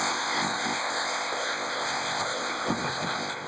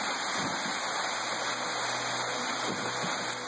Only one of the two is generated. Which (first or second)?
first